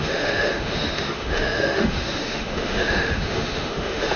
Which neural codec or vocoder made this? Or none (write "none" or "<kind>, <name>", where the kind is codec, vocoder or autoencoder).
autoencoder, DAC-VAE